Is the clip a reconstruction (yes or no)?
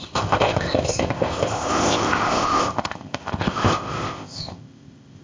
yes